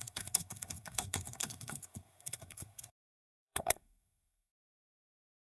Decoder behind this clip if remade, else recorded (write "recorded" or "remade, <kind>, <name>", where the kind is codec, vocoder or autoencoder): remade, codec, SNAC